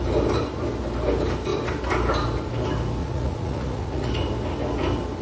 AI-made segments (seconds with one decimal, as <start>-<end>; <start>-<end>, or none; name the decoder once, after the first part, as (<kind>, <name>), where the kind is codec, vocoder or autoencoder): 3.0-4.1 (vocoder, Vocos)